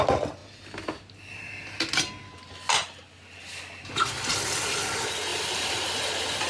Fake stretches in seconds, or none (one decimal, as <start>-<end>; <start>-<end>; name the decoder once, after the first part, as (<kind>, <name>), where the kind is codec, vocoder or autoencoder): 5.3-5.9 (vocoder, BigVGAN v2)